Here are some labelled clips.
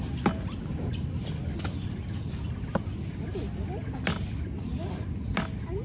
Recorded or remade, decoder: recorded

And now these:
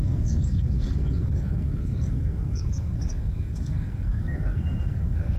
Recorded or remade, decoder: remade, codec, SNAC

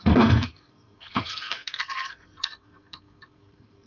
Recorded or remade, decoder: remade, codec, SNAC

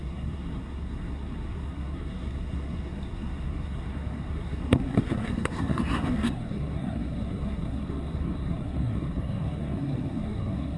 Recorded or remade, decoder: remade, codec, SNAC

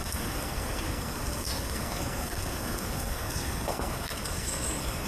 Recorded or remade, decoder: remade, codec, SNAC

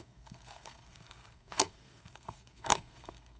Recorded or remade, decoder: remade, codec, SNAC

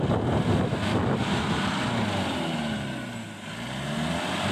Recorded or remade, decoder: recorded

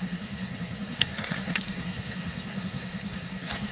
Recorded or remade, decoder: remade, codec, SNAC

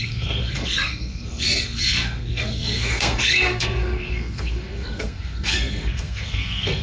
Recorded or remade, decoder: remade, codec, SNAC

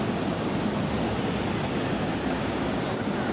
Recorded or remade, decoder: recorded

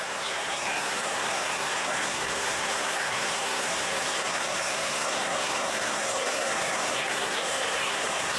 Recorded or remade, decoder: remade, codec, SNAC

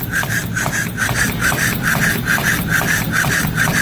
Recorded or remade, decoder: recorded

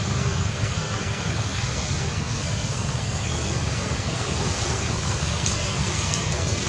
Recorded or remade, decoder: remade, codec, SNAC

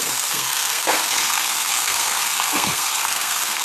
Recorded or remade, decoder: remade, codec, SNAC